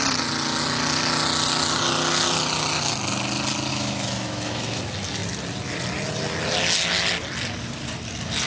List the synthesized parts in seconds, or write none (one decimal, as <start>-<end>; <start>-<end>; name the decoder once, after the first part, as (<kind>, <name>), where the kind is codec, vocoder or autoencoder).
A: 3.7-4.8 (autoencoder, DAC-VAE)